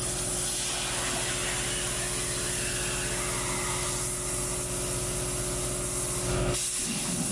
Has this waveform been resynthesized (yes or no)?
no